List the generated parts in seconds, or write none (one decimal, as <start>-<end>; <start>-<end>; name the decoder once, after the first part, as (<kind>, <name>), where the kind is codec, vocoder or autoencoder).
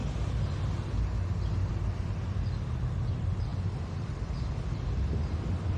none